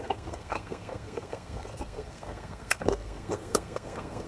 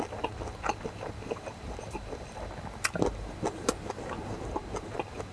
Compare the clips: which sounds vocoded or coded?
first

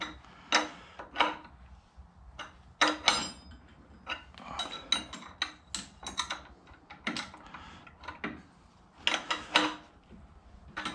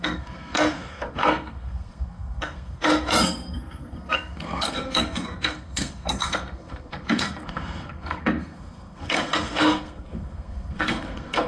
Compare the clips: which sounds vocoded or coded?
second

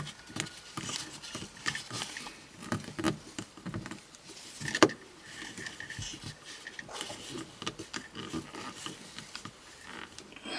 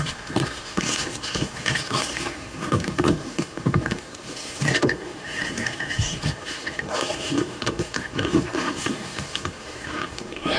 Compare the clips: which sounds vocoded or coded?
second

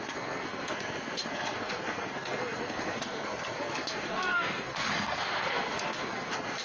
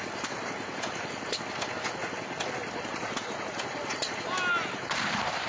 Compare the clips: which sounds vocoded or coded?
first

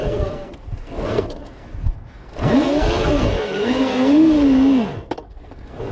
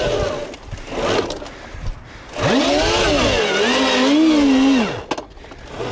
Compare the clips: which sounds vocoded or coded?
first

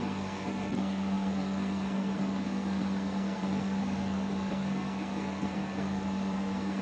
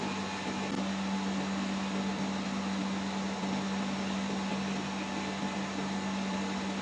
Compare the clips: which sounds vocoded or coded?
first